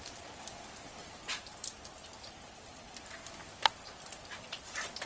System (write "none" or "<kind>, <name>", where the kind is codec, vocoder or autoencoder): none